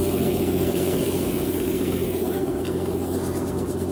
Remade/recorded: remade